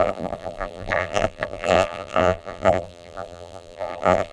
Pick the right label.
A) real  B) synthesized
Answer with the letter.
B